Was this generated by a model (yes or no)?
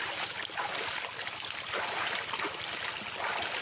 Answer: no